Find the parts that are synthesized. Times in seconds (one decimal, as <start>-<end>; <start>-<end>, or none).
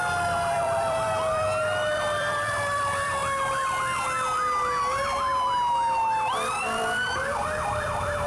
0.0-3.2; 6.6-8.3